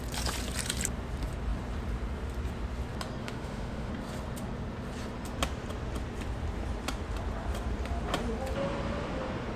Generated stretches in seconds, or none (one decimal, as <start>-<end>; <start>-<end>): 3.2-3.9